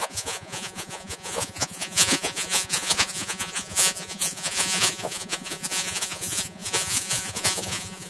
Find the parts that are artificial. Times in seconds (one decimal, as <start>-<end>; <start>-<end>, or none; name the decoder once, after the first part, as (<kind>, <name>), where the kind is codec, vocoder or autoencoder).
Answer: 0.0-8.1 (vocoder, Vocos)